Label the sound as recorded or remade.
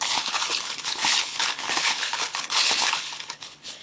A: remade